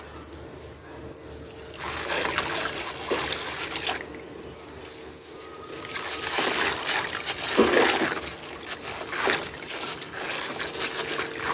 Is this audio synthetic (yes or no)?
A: no